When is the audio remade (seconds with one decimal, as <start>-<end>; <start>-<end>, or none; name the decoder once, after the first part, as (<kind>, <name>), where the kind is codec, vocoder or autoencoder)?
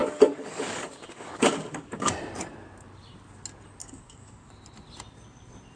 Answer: 0.0-2.1 (codec, DAC); 3.8-4.5